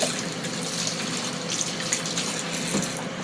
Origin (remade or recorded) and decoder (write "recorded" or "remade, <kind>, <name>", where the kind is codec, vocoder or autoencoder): recorded